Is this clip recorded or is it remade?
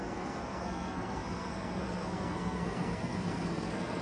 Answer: remade